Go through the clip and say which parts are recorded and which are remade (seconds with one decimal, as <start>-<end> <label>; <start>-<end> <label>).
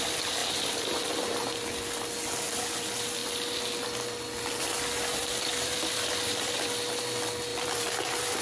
0.0-0.4 recorded; 0.4-1.1 remade; 1.1-5.1 recorded; 5.1-7.0 remade; 7.0-7.5 recorded; 7.5-8.4 remade